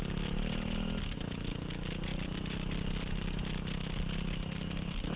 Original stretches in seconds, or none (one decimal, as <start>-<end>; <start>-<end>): 0.0-5.2